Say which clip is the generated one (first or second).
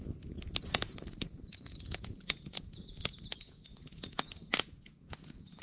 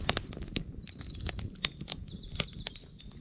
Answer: first